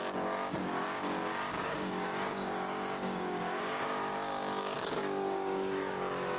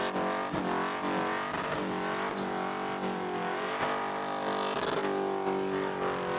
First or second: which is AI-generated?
first